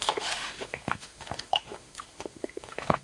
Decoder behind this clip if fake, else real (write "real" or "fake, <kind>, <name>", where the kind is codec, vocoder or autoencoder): fake, autoencoder, DAC-VAE